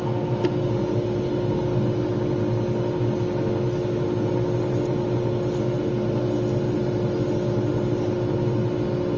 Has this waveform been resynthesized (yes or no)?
no